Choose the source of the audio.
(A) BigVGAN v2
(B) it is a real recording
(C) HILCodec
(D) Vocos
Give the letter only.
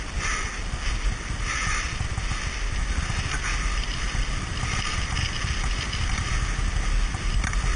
B